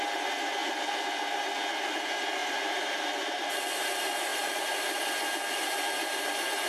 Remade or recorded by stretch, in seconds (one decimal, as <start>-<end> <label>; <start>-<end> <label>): 0.0-2.4 recorded; 2.4-3.6 remade; 3.6-4.3 recorded; 4.3-5.0 remade; 5.0-6.7 recorded